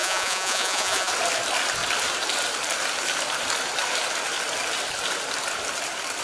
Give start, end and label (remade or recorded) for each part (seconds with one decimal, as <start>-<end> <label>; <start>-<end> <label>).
0.0-1.1 remade; 1.1-6.2 recorded